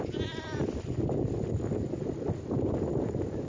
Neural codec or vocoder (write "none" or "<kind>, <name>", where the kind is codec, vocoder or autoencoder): none